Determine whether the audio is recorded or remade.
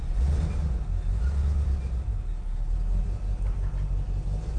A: recorded